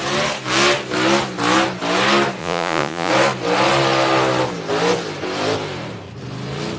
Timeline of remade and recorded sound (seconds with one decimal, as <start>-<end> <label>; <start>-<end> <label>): 0.0-2.4 recorded; 2.4-3.1 remade; 3.1-6.8 recorded